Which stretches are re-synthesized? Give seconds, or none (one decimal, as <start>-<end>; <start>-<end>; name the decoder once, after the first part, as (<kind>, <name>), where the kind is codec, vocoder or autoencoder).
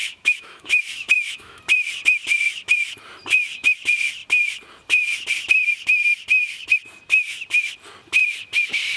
0.0-1.6 (autoencoder, DAC-VAE)